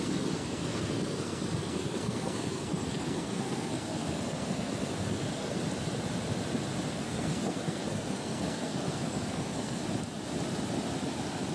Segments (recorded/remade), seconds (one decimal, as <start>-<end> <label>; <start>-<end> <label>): 0.0-5.6 remade; 5.6-6.9 recorded; 6.9-9.8 remade; 9.8-11.5 recorded